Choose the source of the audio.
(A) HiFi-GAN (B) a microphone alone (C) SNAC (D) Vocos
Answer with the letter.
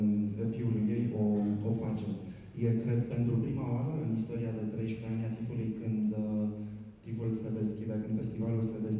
B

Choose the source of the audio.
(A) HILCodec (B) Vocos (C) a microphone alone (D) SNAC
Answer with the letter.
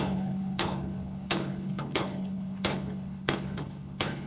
A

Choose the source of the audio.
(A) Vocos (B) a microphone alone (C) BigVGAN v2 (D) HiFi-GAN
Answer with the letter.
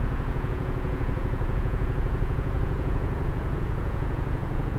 A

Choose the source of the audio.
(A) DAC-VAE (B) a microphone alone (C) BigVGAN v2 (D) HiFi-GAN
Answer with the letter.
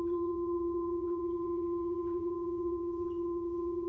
D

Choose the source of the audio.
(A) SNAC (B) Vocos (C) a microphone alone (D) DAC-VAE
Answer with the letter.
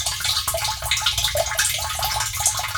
C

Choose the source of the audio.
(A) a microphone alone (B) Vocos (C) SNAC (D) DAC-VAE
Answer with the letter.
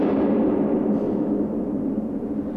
A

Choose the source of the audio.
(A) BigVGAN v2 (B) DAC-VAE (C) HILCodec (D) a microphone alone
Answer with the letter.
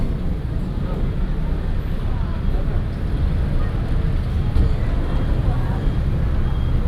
D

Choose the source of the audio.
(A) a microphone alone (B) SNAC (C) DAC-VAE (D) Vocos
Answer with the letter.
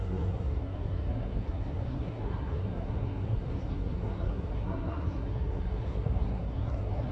B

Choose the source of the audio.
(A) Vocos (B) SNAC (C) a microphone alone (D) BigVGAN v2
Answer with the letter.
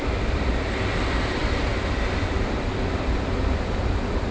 D